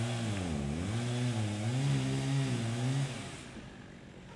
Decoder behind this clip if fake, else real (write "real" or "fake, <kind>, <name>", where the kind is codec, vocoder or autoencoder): real